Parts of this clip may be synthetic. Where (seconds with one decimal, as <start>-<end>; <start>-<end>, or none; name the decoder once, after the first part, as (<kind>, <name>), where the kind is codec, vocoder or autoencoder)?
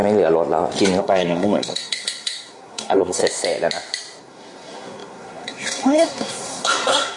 1.0-3.2 (codec, SNAC); 4.2-7.2